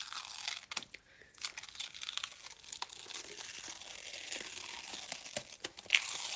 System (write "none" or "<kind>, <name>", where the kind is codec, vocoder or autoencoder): none